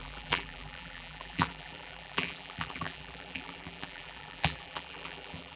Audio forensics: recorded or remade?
remade